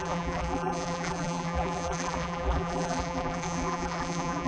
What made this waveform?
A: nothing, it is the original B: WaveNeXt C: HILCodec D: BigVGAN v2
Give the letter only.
D